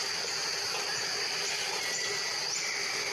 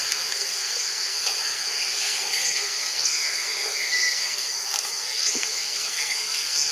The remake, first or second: second